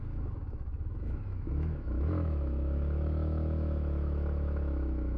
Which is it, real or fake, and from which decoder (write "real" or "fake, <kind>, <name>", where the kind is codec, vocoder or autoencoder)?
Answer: fake, autoencoder, DAC-VAE